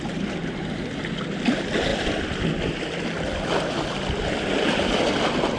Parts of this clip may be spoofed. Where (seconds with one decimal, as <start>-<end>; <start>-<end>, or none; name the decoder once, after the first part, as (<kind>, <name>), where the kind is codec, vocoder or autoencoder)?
1.9-3.0 (vocoder, BigVGAN v2)